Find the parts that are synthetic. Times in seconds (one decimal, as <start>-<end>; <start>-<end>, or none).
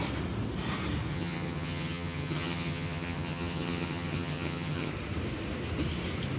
1.1-4.9